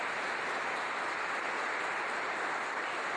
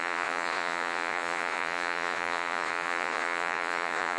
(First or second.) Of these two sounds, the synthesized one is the second